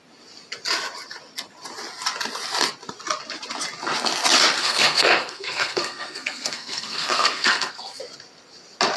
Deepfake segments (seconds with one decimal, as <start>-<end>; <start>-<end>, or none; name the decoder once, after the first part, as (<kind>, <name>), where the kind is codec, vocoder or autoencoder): 4.6-8.0 (codec, SNAC)